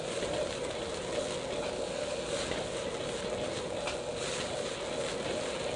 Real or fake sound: real